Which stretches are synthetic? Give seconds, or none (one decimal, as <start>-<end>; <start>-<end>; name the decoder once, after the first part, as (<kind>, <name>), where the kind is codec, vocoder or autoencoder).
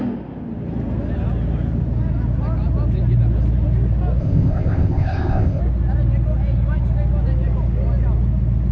4.2-5.6 (codec, ZipCodec)